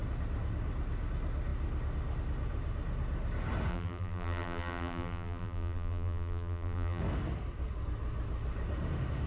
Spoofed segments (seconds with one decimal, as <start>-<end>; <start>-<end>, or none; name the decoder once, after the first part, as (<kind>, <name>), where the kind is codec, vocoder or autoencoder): 3.7-7.0 (vocoder, BigVGAN v2)